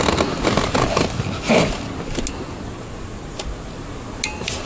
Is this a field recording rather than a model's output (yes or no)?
yes